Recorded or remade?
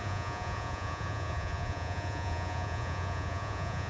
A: remade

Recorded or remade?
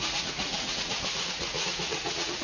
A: remade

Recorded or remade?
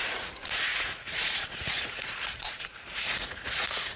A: remade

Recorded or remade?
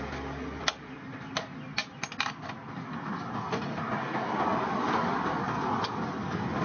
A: recorded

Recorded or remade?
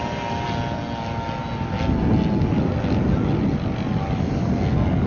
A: recorded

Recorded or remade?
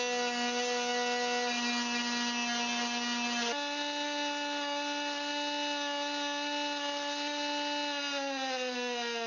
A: recorded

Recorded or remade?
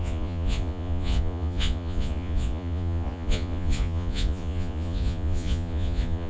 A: remade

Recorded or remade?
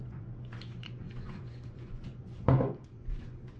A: remade